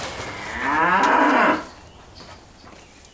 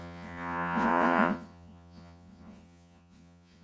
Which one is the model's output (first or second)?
second